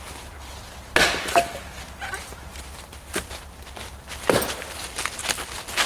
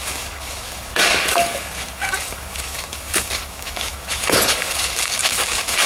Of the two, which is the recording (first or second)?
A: first